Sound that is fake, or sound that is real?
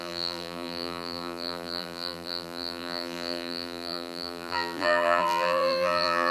fake